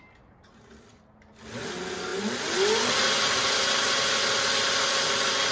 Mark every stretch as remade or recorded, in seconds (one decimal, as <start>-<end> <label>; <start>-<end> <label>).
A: 0.0-5.5 recorded